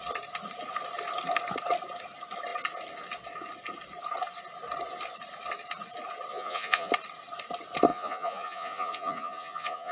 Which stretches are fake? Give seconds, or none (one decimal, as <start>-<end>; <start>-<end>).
6.3-6.9; 7.9-9.9